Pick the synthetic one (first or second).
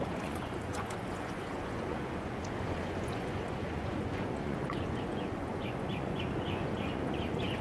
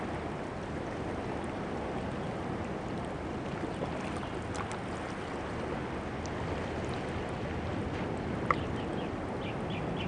first